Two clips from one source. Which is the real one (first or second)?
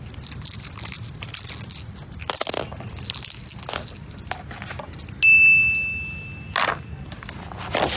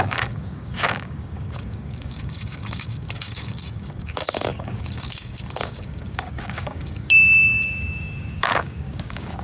first